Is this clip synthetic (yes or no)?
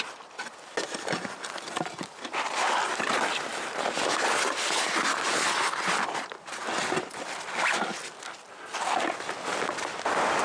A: no